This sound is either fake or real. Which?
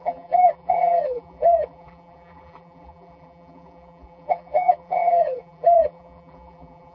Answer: fake